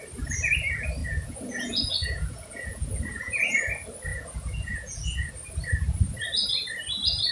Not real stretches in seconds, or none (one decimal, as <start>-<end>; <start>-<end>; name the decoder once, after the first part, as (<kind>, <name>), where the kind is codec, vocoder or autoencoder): 1.0-3.5 (vocoder, Vocos); 4.1-5.3